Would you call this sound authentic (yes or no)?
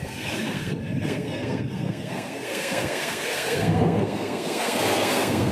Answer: no